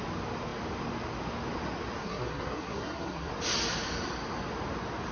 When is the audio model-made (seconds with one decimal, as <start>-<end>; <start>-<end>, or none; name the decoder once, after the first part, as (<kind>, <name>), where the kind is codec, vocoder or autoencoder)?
2.0-3.3 (codec, SNAC)